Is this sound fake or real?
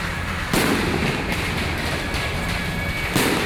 real